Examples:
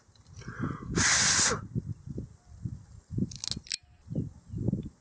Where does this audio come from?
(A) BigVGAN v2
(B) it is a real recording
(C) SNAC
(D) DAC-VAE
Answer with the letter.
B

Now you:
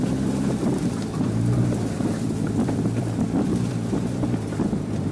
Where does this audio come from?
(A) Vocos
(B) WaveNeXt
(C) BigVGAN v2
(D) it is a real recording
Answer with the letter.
C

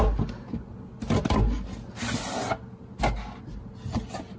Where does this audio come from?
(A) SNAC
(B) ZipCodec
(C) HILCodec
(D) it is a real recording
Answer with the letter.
D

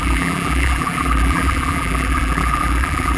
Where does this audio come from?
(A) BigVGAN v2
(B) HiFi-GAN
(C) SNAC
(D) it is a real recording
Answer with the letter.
A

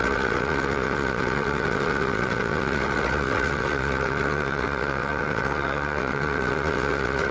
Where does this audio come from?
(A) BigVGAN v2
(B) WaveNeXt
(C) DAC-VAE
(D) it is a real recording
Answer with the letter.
B